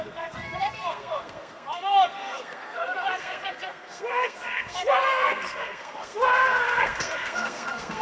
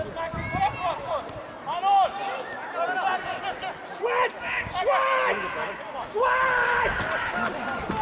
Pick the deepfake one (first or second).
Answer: first